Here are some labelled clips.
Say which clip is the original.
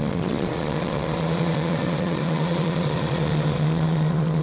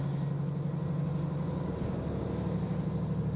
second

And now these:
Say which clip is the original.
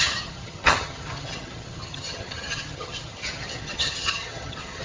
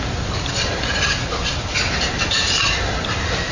second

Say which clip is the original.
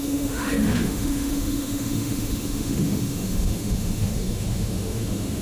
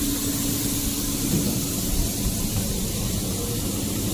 second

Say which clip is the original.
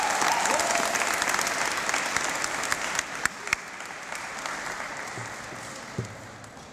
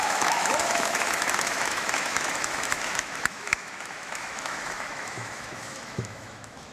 first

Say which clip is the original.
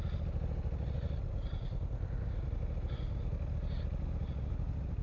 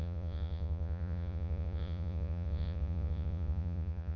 first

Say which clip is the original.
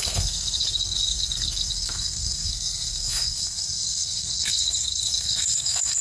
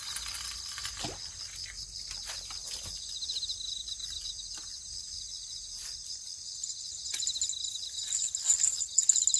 second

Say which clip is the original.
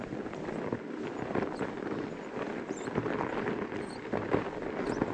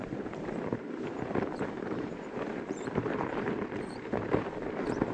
first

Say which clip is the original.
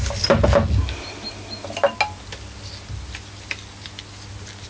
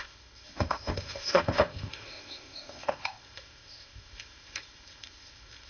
first